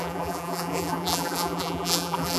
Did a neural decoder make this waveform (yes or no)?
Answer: yes